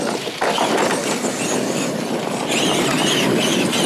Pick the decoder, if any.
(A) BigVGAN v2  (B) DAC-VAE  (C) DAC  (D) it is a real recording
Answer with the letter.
D